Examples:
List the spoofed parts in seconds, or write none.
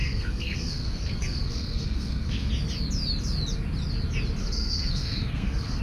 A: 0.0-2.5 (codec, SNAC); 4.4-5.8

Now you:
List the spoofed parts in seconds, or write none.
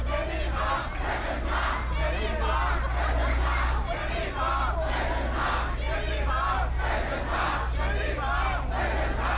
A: none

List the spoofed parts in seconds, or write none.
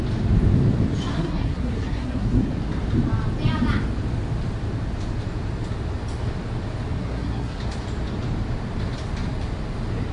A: 1.1-2.5 (codec, SNAC); 7.0-7.6